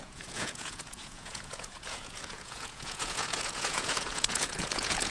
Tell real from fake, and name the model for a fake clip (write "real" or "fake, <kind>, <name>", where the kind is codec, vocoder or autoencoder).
fake, vocoder, Vocos